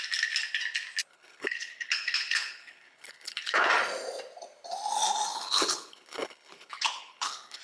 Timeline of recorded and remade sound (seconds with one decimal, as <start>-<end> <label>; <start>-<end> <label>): 0.0-1.1 recorded; 1.1-3.7 remade; 3.7-5.3 recorded; 5.3-7.6 remade